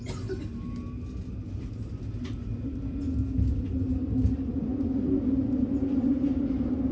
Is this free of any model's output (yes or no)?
yes